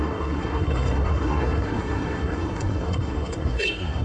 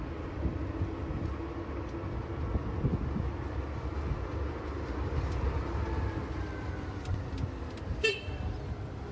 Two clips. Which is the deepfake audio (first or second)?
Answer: first